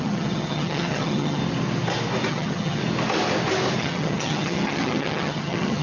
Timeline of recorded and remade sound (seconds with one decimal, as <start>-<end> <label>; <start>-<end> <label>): 0.0-1.4 remade; 1.4-2.3 recorded; 2.3-2.8 remade; 2.8-3.8 recorded; 3.8-5.8 remade